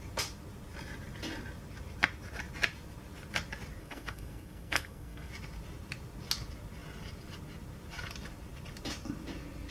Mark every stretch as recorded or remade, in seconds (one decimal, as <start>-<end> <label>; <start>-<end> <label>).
0.0-3.8 recorded; 3.8-5.3 remade; 5.3-9.7 recorded